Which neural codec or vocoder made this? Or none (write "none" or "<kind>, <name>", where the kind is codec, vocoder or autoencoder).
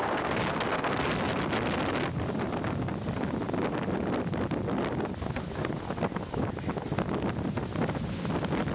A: none